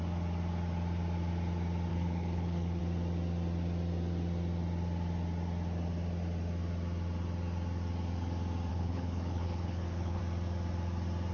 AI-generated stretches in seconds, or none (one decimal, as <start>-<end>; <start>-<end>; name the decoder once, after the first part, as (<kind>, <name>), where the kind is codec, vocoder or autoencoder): 1.9-2.8 (codec, HILCodec); 8.7-10.2